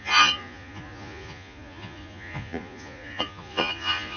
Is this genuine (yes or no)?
no